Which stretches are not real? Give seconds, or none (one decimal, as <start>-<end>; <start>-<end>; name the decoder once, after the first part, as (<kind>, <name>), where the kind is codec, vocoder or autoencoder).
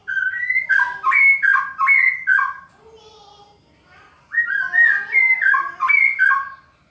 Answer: none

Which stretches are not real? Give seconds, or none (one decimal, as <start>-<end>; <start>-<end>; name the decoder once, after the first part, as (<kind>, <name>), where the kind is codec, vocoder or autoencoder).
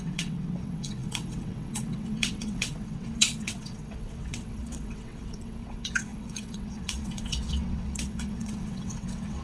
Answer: 0.0-9.4 (vocoder, WaveNeXt)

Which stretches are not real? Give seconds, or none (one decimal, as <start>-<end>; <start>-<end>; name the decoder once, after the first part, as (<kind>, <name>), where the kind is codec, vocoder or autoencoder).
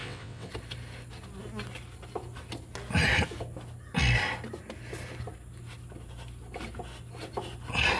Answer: 0.0-0.5 (vocoder, WaveNeXt)